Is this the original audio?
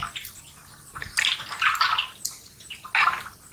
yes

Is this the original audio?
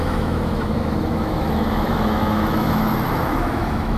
no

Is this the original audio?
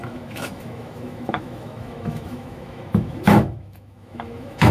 no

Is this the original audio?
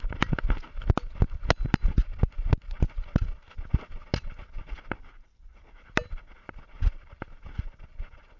yes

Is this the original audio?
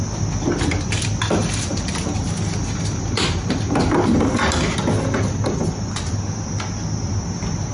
yes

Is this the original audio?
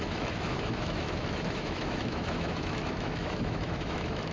no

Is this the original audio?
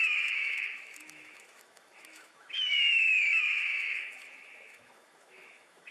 no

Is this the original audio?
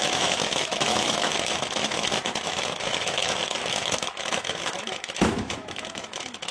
no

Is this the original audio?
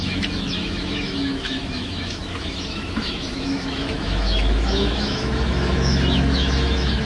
no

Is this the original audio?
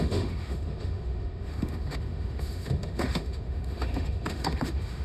no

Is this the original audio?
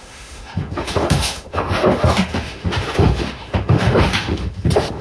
no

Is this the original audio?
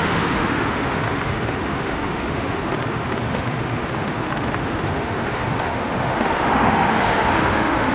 no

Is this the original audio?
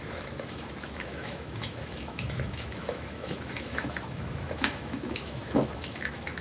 no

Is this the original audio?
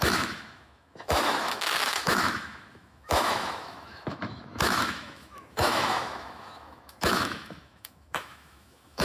no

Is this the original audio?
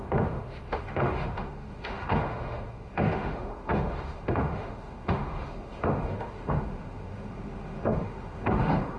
no